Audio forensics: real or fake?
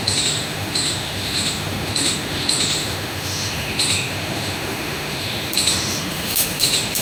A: fake